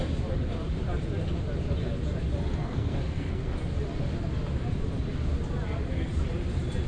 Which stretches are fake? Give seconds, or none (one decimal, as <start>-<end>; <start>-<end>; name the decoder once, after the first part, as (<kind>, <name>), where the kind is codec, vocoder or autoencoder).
2.6-3.6 (codec, SNAC)